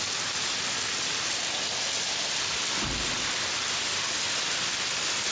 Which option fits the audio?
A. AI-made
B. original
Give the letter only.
B